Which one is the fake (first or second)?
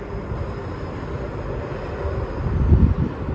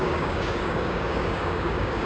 second